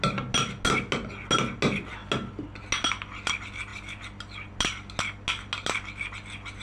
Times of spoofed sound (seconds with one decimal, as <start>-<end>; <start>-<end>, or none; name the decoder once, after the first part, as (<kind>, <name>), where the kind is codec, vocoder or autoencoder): none